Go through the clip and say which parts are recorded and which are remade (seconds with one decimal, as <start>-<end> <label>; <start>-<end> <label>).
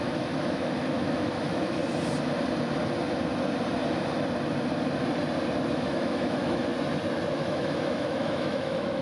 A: 0.0-1.8 remade; 1.8-5.7 recorded; 5.7-6.7 remade; 6.7-7.3 recorded; 7.3-9.0 remade